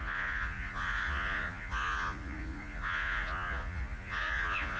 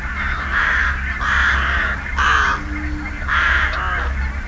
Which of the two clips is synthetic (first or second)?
first